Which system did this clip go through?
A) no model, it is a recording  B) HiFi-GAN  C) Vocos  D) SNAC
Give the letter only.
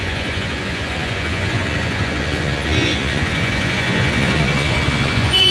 C